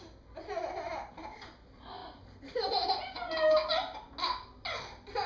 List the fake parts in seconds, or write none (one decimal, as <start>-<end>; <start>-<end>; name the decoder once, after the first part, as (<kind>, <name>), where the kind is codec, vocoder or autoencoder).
none